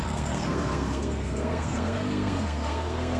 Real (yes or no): no